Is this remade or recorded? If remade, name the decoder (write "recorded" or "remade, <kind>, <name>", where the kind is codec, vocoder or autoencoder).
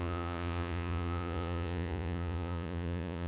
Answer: remade, vocoder, Vocos